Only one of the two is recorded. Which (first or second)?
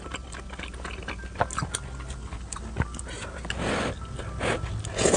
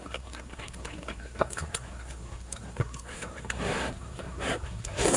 first